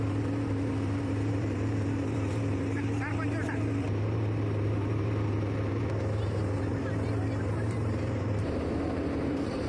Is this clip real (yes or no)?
no